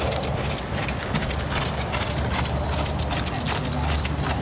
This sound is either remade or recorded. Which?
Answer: recorded